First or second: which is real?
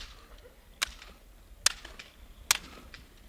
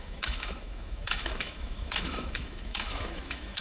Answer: first